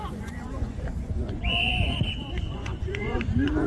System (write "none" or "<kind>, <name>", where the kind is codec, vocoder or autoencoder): vocoder, Vocos